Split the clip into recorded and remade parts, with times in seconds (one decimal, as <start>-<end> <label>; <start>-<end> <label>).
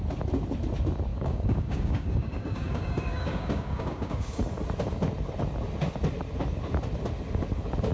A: 0.0-1.1 recorded; 1.1-4.4 remade; 4.4-7.9 recorded